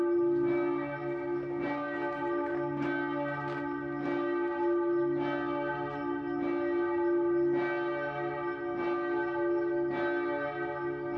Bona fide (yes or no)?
yes